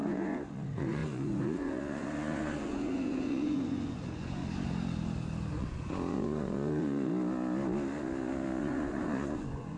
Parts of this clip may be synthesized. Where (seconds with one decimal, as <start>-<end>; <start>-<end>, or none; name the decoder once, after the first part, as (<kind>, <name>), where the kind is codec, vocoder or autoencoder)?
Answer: 0.0-4.4 (vocoder, Vocos); 5.5-7.1; 8.6-9.8